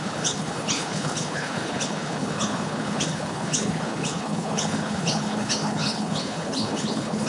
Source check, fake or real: fake